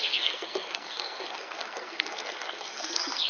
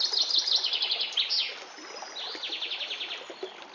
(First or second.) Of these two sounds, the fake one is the first